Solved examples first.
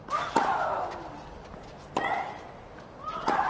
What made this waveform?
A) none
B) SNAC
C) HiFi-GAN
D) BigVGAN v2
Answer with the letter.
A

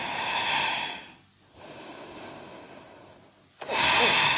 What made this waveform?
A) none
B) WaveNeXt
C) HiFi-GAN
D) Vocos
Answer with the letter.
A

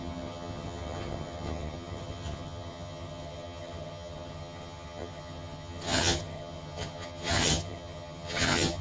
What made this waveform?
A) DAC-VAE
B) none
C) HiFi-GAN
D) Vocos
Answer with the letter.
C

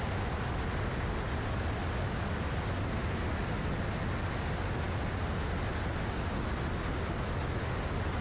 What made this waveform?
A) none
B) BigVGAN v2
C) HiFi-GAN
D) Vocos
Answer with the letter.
A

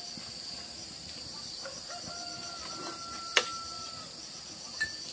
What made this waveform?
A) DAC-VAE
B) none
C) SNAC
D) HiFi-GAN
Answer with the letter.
B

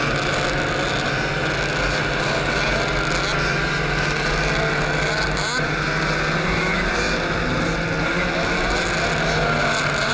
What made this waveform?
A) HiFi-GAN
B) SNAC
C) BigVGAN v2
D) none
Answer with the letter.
D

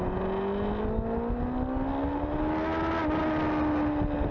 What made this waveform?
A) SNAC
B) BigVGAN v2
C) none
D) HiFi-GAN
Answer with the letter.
C